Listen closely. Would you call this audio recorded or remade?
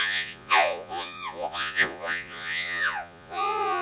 remade